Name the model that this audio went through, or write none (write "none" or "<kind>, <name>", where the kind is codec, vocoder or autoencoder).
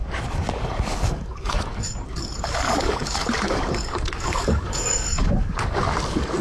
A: codec, DAC